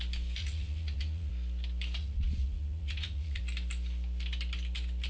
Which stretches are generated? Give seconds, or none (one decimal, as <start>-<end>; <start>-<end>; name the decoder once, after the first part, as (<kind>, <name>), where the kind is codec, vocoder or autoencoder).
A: 0.4-1.3 (vocoder, Vocos); 2.0-3.4